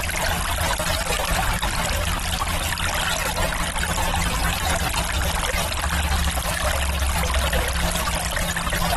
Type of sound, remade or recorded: recorded